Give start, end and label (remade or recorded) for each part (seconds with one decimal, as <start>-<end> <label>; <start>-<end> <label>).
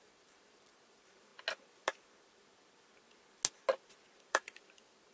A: 0.0-1.3 remade; 1.3-4.3 recorded; 4.3-5.1 remade